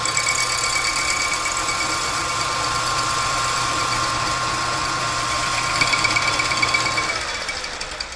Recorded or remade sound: remade